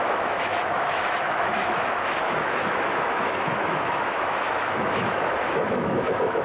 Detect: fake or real fake